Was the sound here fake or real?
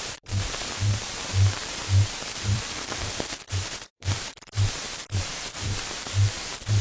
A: fake